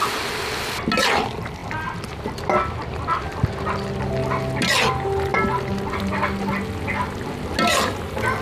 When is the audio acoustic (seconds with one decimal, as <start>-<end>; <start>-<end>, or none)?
0.0-8.4